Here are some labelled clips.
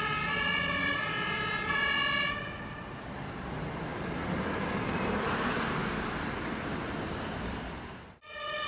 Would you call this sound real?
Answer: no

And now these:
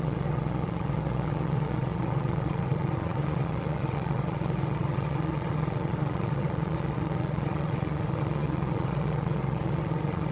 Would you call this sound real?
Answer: no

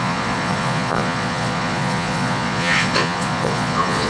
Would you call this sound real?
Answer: no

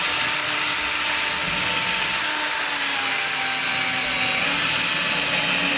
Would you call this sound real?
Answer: yes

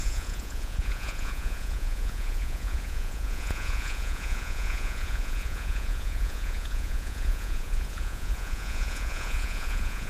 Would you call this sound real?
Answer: no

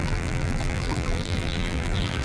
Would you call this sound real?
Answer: no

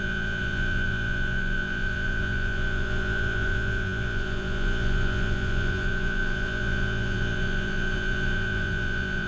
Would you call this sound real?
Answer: no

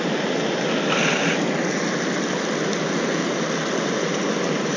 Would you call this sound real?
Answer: yes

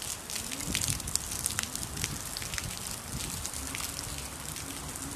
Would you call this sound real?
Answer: yes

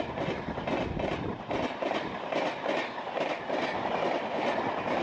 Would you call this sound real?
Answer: yes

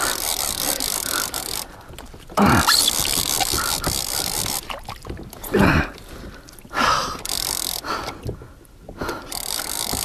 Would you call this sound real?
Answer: yes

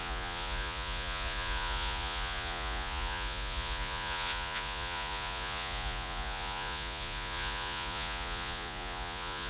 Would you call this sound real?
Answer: no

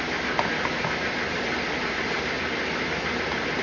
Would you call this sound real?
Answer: yes